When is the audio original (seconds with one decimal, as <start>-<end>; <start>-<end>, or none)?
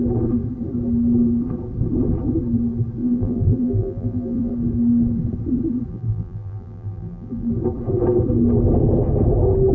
0.0-3.0; 4.5-5.9; 7.5-9.7